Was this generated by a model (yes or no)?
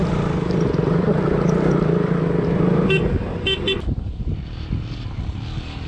yes